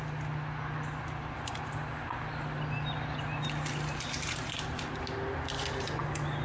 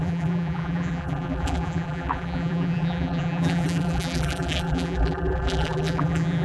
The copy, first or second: second